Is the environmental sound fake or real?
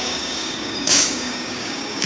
fake